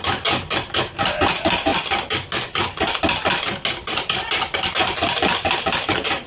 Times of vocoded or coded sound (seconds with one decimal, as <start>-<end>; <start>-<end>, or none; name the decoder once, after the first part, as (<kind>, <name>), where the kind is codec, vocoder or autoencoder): none